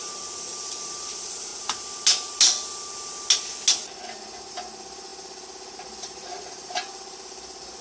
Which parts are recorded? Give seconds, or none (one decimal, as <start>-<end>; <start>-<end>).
1.5-4.5